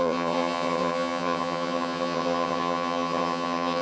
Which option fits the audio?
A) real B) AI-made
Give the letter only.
B